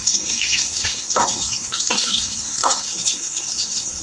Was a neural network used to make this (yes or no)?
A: yes